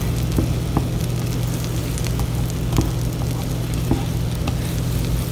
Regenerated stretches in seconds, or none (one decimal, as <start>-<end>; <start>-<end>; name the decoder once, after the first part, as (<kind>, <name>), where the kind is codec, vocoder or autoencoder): none